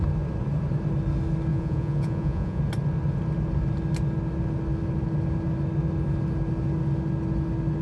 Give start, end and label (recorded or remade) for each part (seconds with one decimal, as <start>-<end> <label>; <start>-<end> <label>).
0.0-1.5 recorded; 1.5-2.6 remade; 2.6-7.8 recorded